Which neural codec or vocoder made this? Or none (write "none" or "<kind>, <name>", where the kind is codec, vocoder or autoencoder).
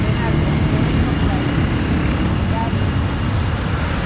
none